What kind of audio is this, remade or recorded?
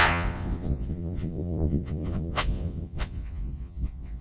remade